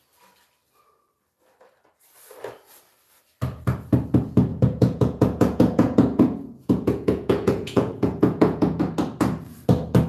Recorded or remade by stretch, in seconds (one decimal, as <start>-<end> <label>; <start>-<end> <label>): 0.0-4.5 recorded; 4.5-8.8 remade; 8.8-10.1 recorded